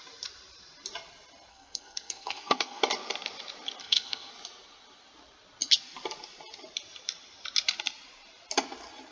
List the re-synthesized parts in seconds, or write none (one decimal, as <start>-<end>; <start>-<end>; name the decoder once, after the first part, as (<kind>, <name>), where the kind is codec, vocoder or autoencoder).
1.5-2.8 (codec, SNAC); 3.8-4.3